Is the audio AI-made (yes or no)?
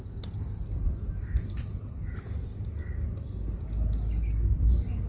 no